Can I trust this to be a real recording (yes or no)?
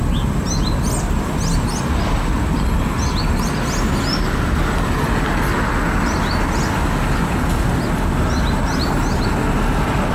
yes